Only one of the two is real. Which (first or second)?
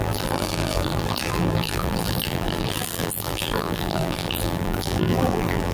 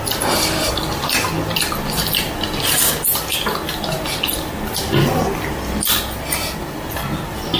second